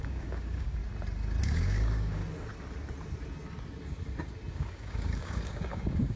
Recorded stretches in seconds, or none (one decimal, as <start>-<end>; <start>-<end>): 0.8-1.4; 2.2-4.5

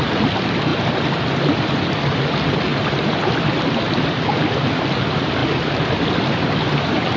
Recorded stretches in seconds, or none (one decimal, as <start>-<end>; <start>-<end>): 0.0-0.7; 1.9-2.7; 3.8-5.4; 6.1-7.2

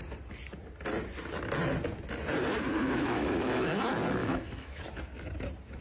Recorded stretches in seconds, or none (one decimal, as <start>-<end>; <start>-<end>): 0.0-2.8; 3.8-4.2; 4.8-5.8

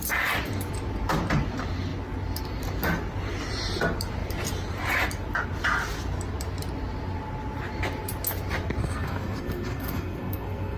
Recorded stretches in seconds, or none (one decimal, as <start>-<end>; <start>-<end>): 0.0-8.8

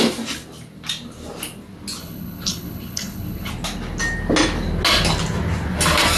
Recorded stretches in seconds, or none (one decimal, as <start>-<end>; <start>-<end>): 0.0-2.0; 3.5-6.2

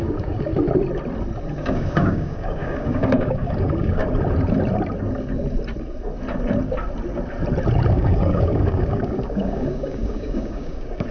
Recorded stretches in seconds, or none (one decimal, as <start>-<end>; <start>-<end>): 0.5-1.6; 4.0-7.9